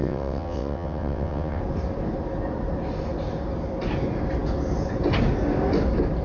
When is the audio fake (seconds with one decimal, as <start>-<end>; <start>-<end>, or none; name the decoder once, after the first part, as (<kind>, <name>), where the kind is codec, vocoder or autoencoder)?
0.0-1.6 (vocoder, WaveNeXt)